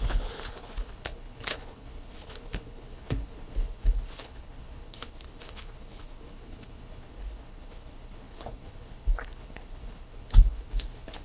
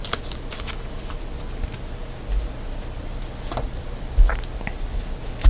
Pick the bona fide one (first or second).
second